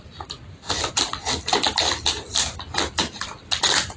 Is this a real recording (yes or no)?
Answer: yes